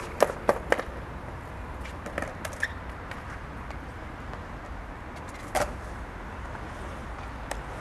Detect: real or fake real